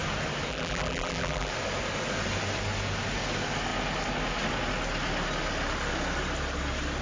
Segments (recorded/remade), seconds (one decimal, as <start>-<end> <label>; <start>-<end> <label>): 0.0-0.5 recorded; 0.5-1.5 remade; 1.5-7.0 recorded